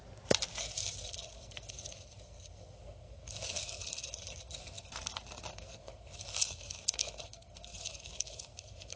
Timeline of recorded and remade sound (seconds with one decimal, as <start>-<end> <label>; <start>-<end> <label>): 0.0-0.6 recorded; 0.6-4.9 remade; 4.9-5.5 recorded; 5.5-9.0 remade